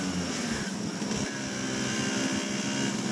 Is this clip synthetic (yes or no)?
no